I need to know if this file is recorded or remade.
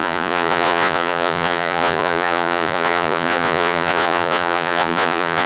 remade